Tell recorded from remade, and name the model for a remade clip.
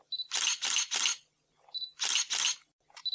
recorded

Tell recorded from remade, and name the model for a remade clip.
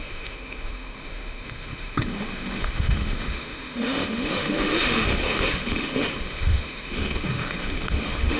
remade, autoencoder, DAC-VAE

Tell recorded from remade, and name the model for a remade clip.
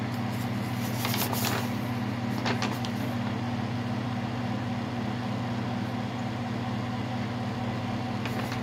recorded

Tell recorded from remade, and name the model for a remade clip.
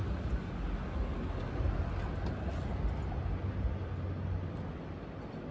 recorded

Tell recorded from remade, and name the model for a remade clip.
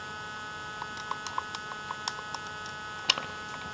recorded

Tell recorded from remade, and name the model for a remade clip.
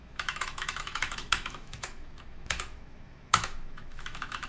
remade, autoencoder, DAC-VAE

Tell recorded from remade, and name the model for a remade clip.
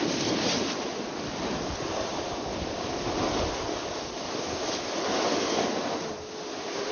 recorded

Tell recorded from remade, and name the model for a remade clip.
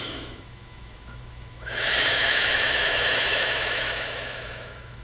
remade, autoencoder, DAC-VAE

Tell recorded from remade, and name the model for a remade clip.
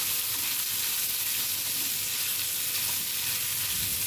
recorded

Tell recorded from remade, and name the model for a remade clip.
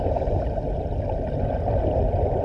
recorded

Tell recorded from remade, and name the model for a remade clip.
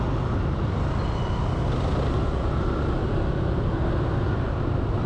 recorded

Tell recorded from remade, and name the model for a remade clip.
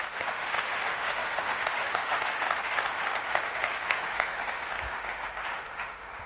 remade, autoencoder, DAC-VAE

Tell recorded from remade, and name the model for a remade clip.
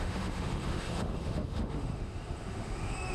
remade, autoencoder, DAC-VAE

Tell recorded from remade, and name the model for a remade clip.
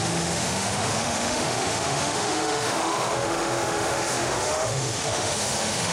remade, autoencoder, DAC-VAE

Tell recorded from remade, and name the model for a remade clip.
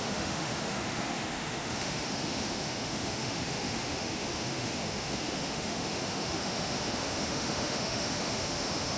remade, autoencoder, DAC-VAE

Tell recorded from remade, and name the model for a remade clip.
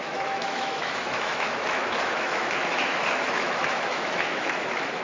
remade, autoencoder, DAC-VAE